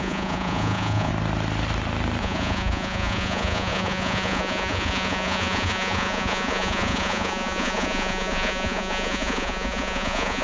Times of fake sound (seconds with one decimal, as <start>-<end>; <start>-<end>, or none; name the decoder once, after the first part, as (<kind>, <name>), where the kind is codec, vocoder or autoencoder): 0.0-1.1 (vocoder, Vocos); 2.2-10.4